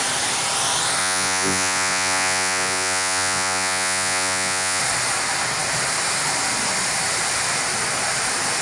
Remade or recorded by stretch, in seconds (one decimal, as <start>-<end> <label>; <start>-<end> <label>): 0.0-1.0 recorded; 1.0-4.8 remade; 4.8-8.6 recorded